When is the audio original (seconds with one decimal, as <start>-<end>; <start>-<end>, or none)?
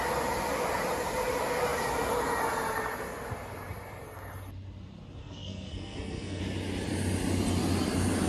0.0-5.2; 6.4-8.3